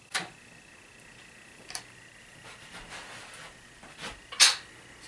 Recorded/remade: recorded